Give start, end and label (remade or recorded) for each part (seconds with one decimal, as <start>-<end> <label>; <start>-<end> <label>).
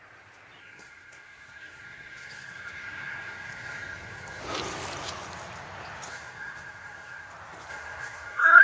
0.0-0.6 recorded; 0.6-4.4 remade; 4.4-6.1 recorded; 6.1-7.3 remade; 7.3-7.7 recorded; 7.7-8.6 remade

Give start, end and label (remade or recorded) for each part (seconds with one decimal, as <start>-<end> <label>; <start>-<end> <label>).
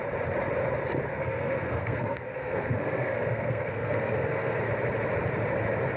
0.0-1.1 recorded; 1.1-4.7 remade; 4.7-6.0 recorded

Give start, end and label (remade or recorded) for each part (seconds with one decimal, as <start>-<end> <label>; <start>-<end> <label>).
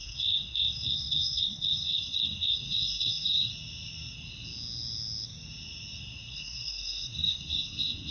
0.0-3.5 remade; 3.5-6.3 recorded; 6.3-8.1 remade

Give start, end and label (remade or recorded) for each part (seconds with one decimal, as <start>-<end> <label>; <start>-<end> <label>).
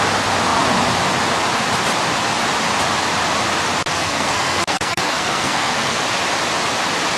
0.0-3.9 recorded; 3.9-6.0 remade; 6.0-7.2 recorded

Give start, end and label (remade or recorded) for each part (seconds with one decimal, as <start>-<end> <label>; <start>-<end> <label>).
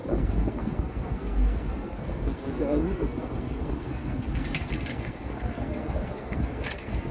0.0-7.1 remade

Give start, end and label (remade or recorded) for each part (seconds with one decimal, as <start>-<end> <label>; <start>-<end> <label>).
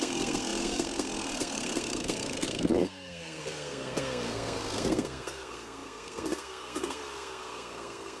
0.0-8.2 remade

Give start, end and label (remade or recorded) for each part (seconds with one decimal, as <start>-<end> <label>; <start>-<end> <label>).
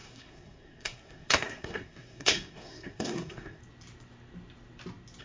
0.0-3.6 remade; 3.6-5.2 recorded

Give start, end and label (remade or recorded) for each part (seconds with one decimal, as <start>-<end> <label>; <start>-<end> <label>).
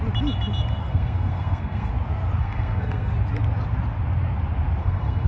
0.0-0.8 recorded; 0.8-1.9 remade; 1.9-2.4 recorded; 2.4-3.1 remade; 3.1-4.8 recorded; 4.8-5.3 remade